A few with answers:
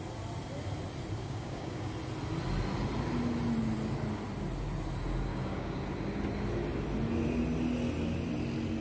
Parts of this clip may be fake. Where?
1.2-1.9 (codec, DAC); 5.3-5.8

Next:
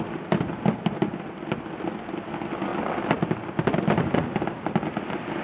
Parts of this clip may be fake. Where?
none

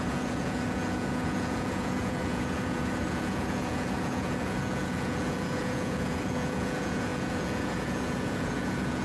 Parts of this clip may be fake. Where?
0.0-9.0 (vocoder, Vocos)

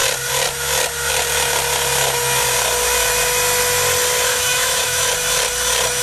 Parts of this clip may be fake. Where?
4.3-5.1 (autoencoder, DAC-VAE)